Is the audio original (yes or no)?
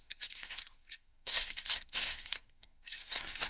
no